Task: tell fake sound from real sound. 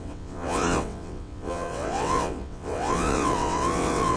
fake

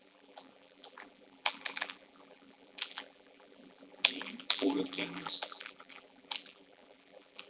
fake